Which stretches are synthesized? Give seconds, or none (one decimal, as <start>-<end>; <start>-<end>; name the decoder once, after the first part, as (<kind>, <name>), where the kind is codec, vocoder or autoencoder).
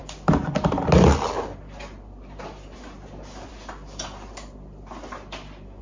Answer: none